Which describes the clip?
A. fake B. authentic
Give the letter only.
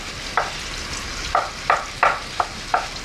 B